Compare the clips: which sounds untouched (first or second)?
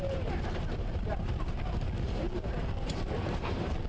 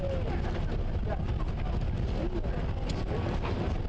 second